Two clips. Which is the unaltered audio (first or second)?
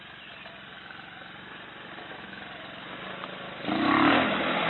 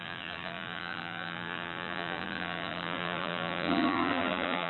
first